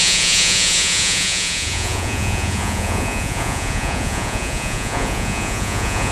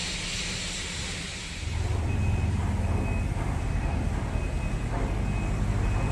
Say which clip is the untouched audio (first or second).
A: second